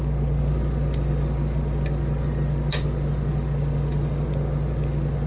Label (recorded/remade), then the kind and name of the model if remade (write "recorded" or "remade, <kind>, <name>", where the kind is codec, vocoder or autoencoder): recorded